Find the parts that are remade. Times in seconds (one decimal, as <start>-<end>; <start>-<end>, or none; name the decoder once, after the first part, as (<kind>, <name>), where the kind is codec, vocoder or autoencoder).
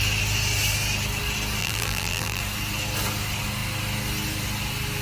1.6-2.4 (vocoder, BigVGAN v2)